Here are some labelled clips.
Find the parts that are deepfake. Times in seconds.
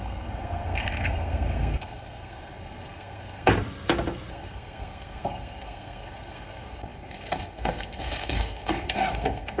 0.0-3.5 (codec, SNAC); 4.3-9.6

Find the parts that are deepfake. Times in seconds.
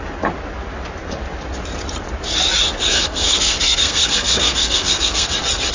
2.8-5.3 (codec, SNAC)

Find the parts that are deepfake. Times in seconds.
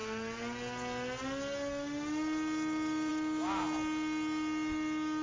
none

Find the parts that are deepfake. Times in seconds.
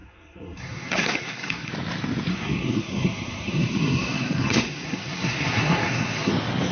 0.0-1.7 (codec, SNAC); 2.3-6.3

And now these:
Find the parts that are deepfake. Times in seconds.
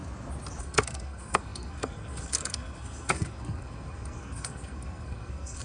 0.6-5.6 (codec, SNAC)